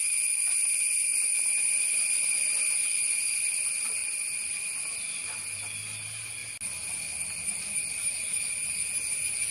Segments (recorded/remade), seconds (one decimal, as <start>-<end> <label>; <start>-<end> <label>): 0.0-1.1 recorded; 1.1-2.7 remade; 2.7-4.0 recorded; 4.0-4.6 remade; 4.6-9.5 recorded